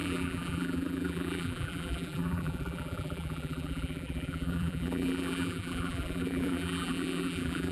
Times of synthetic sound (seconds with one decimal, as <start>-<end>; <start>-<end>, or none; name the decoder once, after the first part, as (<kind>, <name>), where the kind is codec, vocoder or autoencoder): 0.0-7.7 (vocoder, BigVGAN v2)